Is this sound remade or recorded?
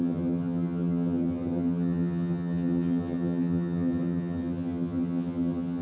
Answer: remade